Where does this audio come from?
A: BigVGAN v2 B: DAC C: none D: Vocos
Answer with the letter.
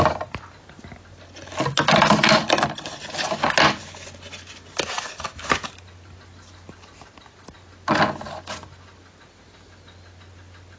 C